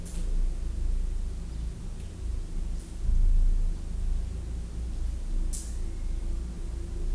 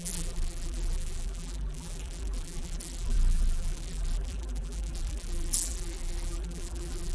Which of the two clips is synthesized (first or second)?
second